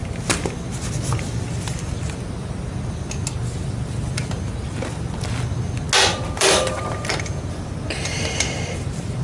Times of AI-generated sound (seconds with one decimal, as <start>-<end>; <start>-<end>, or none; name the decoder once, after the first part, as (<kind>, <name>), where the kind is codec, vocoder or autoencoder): 6.1-7.4 (vocoder, BigVGAN v2)